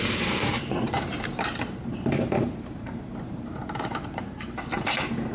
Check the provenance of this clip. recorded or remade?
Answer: remade